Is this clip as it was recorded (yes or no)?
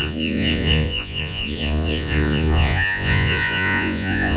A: no